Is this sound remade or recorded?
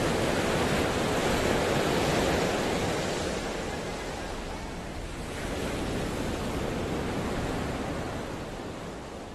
recorded